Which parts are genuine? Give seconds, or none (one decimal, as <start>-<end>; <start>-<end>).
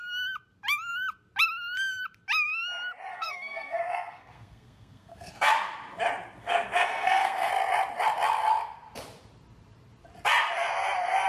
0.0-3.1; 5.5-6.4; 7.5-11.3